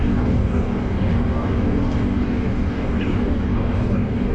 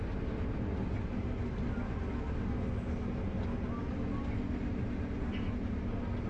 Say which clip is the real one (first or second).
second